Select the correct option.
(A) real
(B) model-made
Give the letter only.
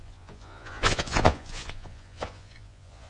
B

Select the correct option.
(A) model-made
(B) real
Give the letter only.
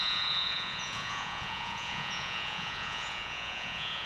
A